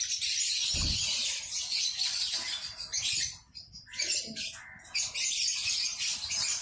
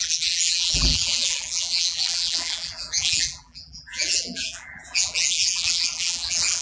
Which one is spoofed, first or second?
second